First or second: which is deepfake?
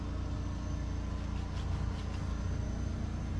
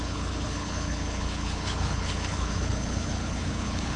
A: second